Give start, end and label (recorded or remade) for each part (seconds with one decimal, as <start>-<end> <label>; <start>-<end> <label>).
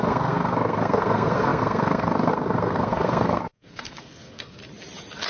0.0-4.6 remade; 4.6-5.3 recorded